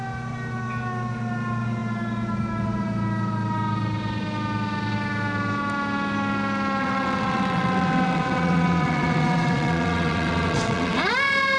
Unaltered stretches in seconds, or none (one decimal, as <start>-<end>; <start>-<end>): 0.0-6.8; 11.1-11.6